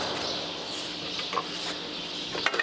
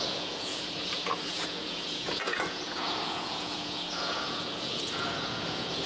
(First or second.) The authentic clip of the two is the first